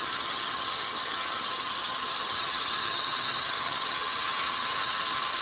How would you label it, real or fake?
fake